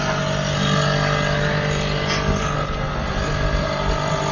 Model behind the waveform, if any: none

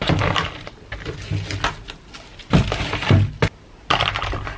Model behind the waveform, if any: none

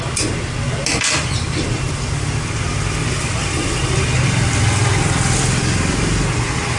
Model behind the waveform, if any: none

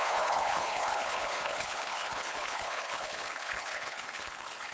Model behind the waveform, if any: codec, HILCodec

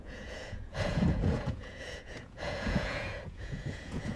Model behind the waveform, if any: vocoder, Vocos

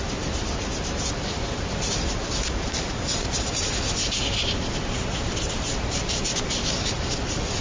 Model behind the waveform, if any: none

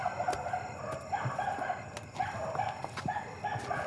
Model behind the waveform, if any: none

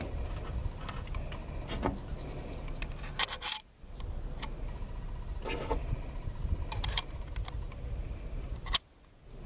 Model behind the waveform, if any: none